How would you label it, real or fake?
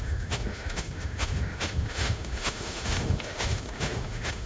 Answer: fake